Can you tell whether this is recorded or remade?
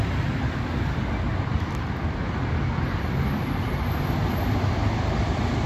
recorded